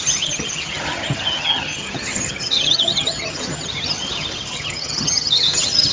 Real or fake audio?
fake